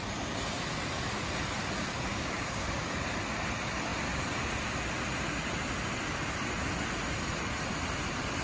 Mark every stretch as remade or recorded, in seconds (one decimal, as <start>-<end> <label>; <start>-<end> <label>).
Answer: 0.0-2.1 recorded; 2.1-2.9 remade; 2.9-8.4 recorded